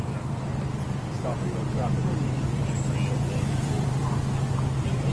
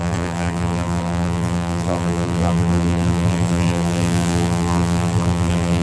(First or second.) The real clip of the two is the first